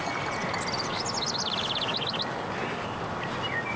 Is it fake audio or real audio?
real